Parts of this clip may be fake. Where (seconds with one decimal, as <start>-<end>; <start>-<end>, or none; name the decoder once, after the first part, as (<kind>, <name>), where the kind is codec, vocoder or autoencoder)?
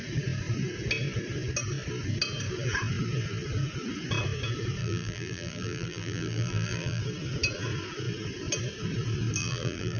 4.8-7.0 (vocoder, BigVGAN v2); 9.4-10.0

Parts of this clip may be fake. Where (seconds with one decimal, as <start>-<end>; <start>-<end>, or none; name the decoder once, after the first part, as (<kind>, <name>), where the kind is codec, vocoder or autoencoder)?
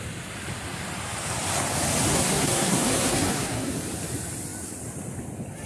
2.1-3.7 (codec, SNAC)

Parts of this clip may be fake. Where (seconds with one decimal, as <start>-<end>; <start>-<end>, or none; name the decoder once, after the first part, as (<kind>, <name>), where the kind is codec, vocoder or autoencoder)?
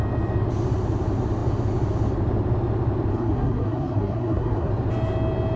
3.1-4.7 (codec, SNAC)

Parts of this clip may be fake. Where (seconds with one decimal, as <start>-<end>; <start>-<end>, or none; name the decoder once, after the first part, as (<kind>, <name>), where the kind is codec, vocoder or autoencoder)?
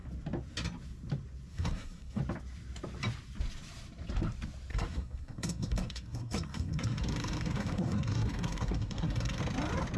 1.5-2.2 (codec, SNAC); 4.7-9.4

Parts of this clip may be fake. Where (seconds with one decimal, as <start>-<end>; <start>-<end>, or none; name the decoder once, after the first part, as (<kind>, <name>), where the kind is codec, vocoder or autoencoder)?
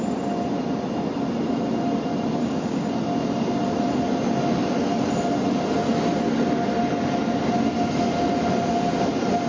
2.4-2.9 (codec, DAC)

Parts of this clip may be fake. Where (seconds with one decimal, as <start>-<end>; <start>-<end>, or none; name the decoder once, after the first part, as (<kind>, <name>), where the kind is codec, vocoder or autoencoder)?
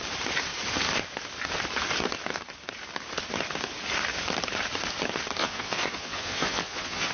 5.4-7.1 (vocoder, Vocos)